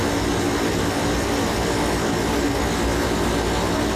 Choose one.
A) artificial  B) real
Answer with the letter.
B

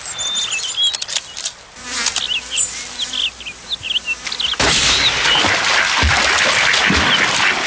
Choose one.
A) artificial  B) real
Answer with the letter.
B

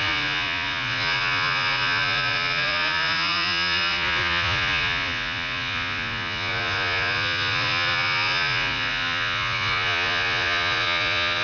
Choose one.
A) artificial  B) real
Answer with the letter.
A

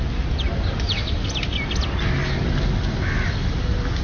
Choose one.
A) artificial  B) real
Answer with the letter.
B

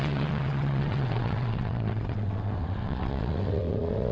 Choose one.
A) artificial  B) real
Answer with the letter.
A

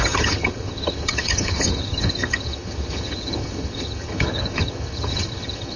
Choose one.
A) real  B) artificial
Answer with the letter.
B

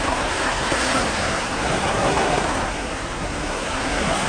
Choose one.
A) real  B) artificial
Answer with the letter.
B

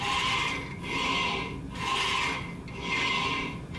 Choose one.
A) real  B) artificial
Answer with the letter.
A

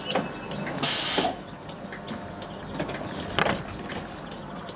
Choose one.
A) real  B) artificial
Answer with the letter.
A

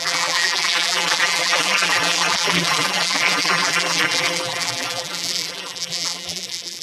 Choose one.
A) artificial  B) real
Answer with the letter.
A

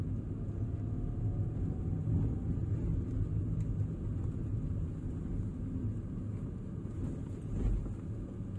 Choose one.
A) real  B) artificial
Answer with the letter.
A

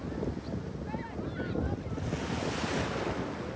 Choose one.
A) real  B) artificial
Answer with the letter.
A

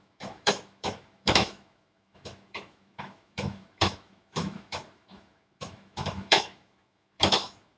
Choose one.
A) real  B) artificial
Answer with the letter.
B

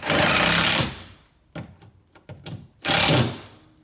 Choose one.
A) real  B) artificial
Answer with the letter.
A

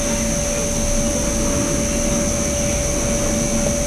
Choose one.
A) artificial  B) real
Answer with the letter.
B